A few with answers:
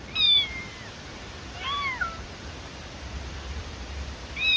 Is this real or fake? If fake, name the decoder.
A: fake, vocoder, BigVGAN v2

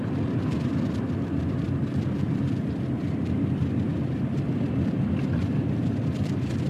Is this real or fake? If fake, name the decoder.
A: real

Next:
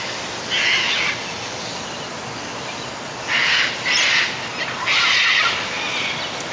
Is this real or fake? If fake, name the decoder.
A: real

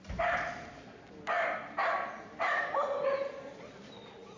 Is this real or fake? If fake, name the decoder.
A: fake, vocoder, BigVGAN v2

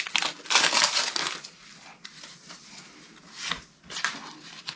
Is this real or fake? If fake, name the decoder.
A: real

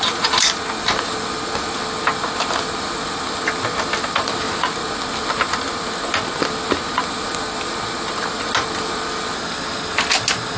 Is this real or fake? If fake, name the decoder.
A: real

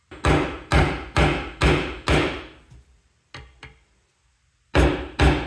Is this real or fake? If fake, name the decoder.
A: real